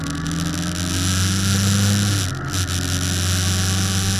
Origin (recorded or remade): recorded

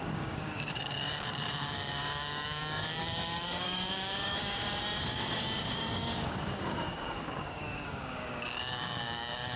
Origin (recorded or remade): remade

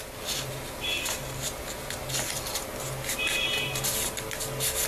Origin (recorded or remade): recorded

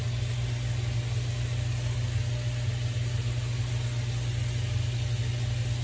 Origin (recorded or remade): recorded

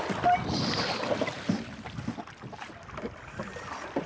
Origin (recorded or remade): recorded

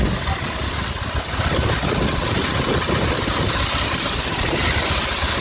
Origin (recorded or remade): recorded